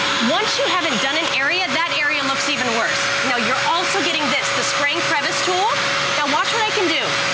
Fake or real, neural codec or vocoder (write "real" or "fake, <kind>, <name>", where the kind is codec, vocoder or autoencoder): real